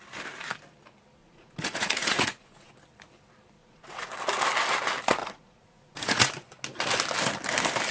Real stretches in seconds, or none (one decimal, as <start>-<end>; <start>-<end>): 0.0-1.2; 2.7-3.6; 4.1-5.2; 6.3-7.9